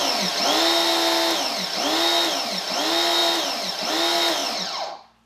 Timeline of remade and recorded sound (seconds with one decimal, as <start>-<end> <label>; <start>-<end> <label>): 0.0-5.3 recorded